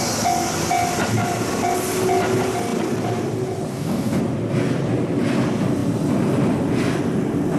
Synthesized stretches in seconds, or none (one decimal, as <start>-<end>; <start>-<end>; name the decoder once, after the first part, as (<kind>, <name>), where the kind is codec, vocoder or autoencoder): 3.7-4.2 (codec, DAC)